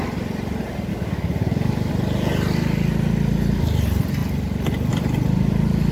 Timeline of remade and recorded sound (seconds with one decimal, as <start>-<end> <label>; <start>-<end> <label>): 0.0-0.9 recorded; 0.9-1.9 remade; 1.9-5.9 recorded